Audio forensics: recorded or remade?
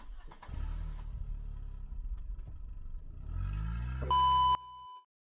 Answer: recorded